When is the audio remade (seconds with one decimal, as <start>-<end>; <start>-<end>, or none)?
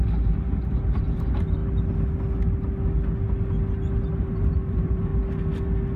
0.0-1.6; 4.2-5.1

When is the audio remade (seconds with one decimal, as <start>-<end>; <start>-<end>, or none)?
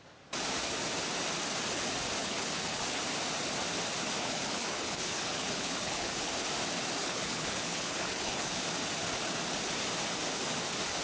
2.2-3.0; 4.2-6.3; 7.0-8.6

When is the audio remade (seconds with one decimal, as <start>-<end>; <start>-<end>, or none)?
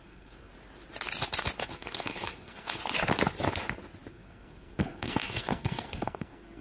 0.0-0.5; 1.6-2.8; 4.1-6.6